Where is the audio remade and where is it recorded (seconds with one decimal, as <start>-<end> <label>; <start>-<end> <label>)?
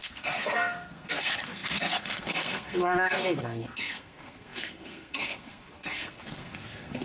0.0-7.0 remade